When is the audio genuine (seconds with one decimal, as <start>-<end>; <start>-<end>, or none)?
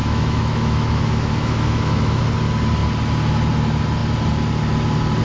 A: 2.2-5.2